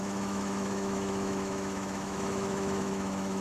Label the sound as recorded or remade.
remade